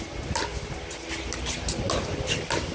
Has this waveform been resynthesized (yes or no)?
no